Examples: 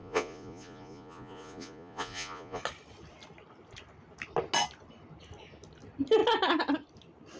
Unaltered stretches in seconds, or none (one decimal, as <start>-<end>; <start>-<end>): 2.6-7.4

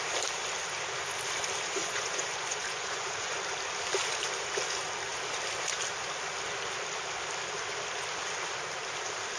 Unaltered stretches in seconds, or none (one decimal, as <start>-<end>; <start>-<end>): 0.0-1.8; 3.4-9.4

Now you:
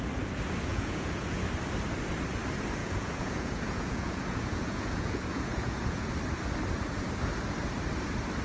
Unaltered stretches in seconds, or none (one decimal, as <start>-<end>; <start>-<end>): 0.0-0.7; 1.4-2.8; 6.1-8.4

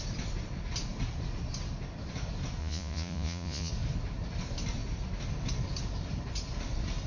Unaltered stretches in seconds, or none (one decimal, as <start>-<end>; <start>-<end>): 0.0-2.6; 3.7-7.1

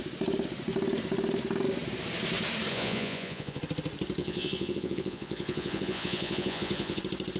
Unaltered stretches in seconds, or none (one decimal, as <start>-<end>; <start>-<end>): 0.0-2.7; 3.6-4.2; 7.0-7.4